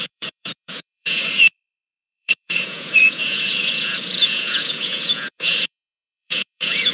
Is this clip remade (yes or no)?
yes